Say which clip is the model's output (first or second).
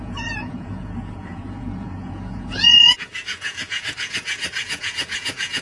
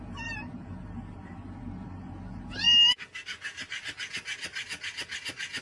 first